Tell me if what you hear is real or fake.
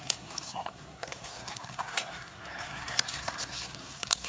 fake